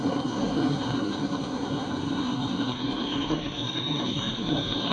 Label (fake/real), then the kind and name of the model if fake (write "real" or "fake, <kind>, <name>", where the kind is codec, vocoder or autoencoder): fake, codec, SNAC